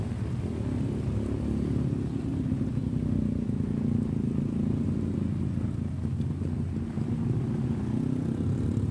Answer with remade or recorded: recorded